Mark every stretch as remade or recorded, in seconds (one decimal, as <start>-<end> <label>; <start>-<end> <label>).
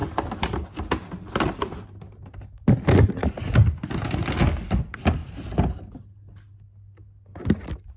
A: 0.0-8.0 recorded